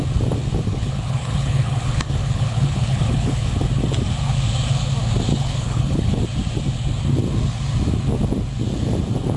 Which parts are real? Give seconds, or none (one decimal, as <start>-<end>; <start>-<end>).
0.0-0.7; 3.5-5.3; 6.2-9.4